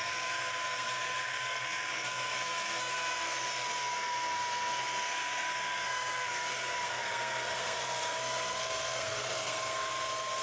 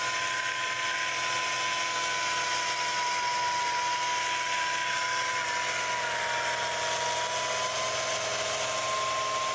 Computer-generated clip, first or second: first